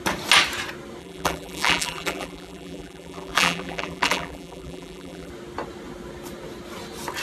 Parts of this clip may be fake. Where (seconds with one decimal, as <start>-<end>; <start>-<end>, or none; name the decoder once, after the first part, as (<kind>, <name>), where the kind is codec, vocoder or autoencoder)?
1.0-5.3 (vocoder, BigVGAN v2)